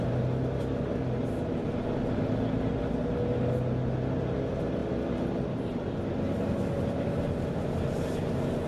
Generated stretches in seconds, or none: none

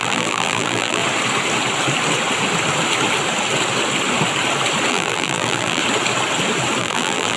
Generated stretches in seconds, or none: 0.0-1.0 (vocoder, BigVGAN v2); 4.9-5.8; 6.8-7.4

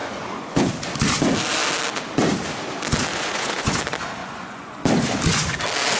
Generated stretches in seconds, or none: 0.0-0.7 (vocoder, Vocos); 3.1-3.8; 4.2-4.8

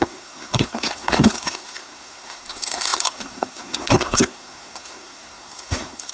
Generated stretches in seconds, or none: 0.0-6.1 (codec, SNAC)

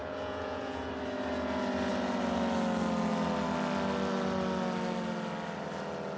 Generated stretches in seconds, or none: 0.0-0.9 (vocoder, Vocos)

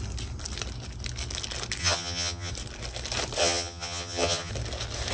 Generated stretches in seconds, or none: 1.8-2.5 (vocoder, HiFi-GAN); 3.4-4.5

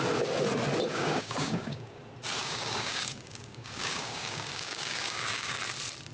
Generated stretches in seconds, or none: 0.9-2.0 (codec, DAC); 2.4-5.6